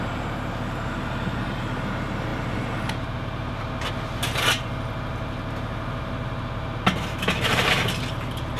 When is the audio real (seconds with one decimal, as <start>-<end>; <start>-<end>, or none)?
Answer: 0.0-8.6